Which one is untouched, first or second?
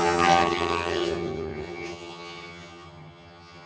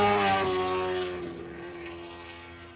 second